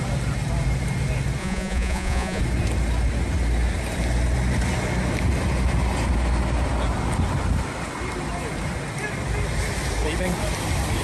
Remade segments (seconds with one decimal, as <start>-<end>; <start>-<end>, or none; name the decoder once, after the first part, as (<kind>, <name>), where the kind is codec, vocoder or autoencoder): 1.4-2.4 (vocoder, Vocos)